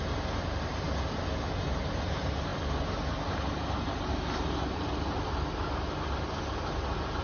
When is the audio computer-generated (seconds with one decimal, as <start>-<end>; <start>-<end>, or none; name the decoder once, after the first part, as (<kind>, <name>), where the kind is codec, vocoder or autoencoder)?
none